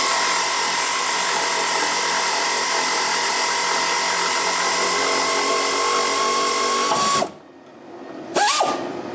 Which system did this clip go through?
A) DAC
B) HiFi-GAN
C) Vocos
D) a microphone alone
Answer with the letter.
D